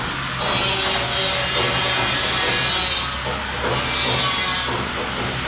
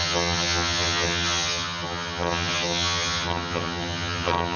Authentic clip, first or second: first